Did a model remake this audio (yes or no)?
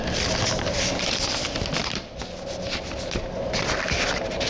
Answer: no